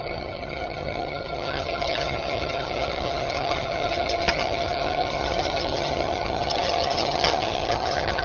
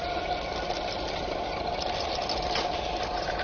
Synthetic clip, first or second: first